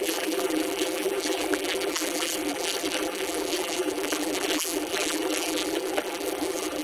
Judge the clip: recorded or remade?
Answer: remade